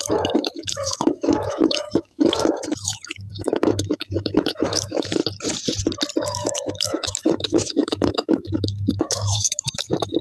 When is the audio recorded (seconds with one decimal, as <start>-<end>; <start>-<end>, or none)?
5.2-6.2